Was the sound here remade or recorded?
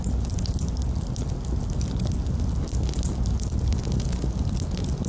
recorded